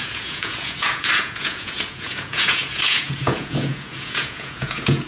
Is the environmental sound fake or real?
fake